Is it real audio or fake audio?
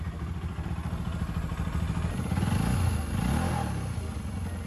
real